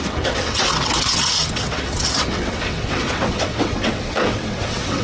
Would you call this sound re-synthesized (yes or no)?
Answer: yes